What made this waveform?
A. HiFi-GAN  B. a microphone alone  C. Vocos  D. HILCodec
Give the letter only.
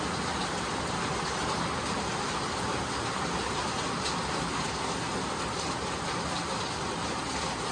B